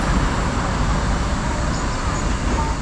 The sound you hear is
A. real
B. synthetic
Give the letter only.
A